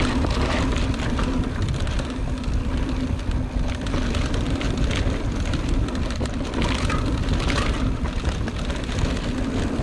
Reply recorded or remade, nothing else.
recorded